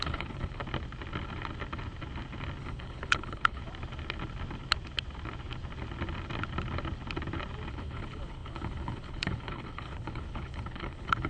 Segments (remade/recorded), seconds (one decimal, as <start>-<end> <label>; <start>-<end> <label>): 0.0-0.6 remade; 0.6-2.6 recorded; 2.6-3.6 remade; 3.6-7.7 recorded; 7.7-11.3 remade